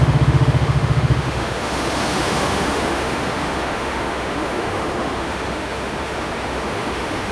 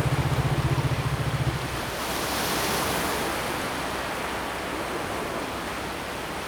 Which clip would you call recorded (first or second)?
second